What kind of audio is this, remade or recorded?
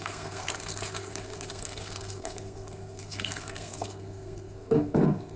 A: remade